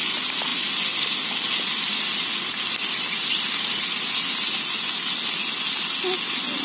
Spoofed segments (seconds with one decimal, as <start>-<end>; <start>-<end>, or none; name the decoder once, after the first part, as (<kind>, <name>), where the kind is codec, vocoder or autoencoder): none